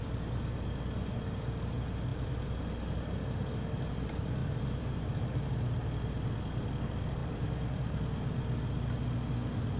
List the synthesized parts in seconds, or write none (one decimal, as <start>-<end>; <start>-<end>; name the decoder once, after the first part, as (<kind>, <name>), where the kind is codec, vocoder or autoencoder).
2.1-2.6 (vocoder, BigVGAN v2); 4.4-4.9; 7.2-8.0